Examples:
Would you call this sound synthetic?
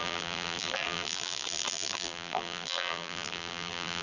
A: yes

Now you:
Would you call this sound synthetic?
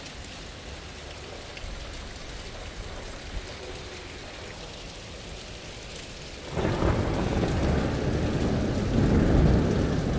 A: no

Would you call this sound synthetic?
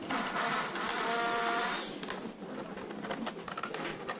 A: no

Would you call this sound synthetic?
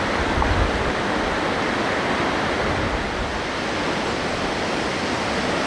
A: no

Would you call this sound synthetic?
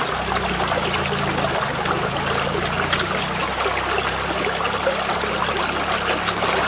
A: no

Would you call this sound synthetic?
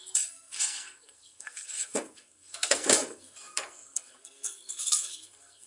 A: yes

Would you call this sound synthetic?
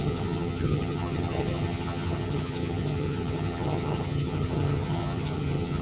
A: yes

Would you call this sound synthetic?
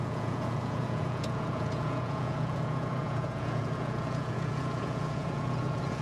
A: yes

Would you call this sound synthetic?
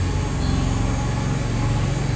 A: no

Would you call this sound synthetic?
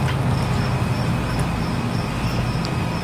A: no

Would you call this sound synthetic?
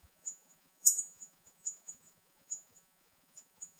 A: yes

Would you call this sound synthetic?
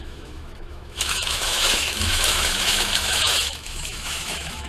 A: yes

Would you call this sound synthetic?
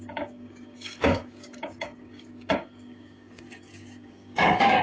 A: yes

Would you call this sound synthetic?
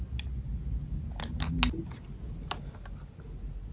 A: no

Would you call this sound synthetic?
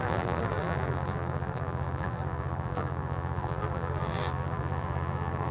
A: yes